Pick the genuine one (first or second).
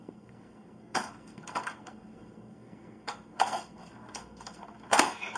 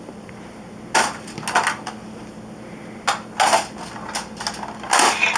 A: second